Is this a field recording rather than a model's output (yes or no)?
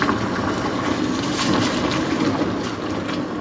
yes